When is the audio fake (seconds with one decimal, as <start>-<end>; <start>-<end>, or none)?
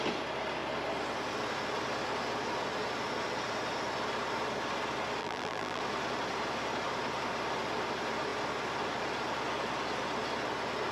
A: 5.2-5.8